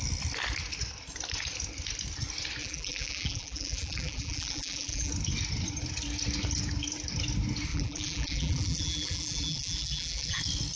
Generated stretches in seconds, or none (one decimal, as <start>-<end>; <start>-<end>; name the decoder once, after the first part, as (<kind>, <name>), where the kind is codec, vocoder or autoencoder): 2.6-5.1 (vocoder, BigVGAN v2); 7.7-10.4